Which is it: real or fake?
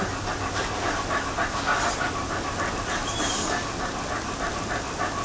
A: real